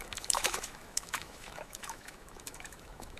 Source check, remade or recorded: remade